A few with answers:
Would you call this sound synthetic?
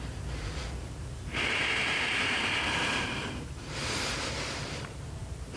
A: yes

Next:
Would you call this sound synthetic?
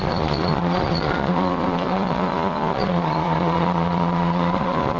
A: yes